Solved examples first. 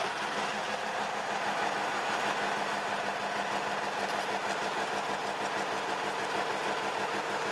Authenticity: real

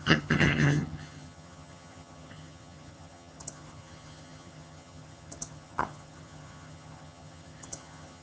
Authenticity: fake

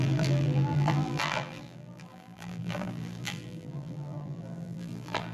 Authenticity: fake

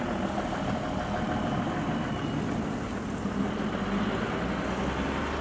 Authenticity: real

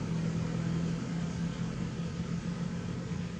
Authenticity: fake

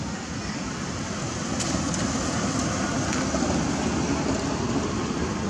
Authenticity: real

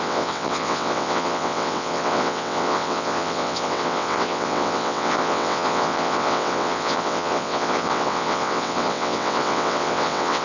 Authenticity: fake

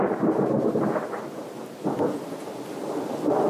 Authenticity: real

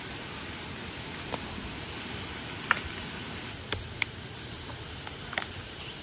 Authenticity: real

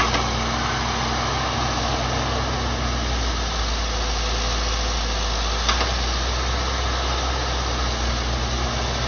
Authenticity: real